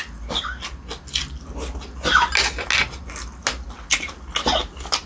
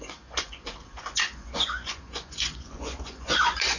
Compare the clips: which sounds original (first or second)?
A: first